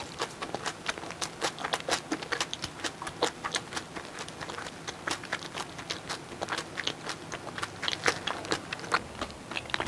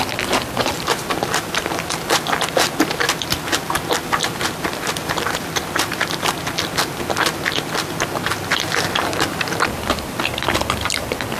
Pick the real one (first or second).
first